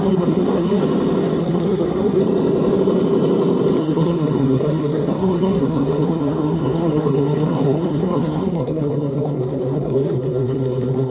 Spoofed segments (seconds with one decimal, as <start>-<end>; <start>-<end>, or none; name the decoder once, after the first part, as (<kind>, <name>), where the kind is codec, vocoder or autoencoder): 0.0-0.8 (codec, SNAC); 1.4-2.2; 3.8-11.1